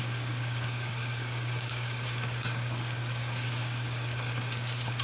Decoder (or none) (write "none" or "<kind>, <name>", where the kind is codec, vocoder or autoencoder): codec, DAC